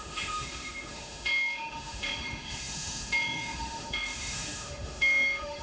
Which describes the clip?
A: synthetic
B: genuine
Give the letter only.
A